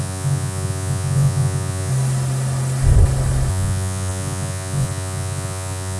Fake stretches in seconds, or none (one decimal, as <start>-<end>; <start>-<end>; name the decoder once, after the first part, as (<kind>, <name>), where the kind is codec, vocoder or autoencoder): 0.0-1.9 (vocoder, Vocos); 3.5-6.0